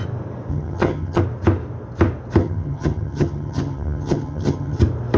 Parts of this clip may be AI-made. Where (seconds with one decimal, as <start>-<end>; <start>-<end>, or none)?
0.5-1.2; 2.4-4.8